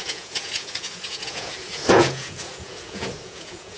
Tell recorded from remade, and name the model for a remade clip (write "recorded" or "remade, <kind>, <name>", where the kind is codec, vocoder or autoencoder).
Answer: remade, vocoder, Vocos